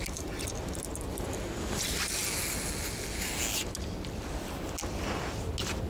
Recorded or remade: recorded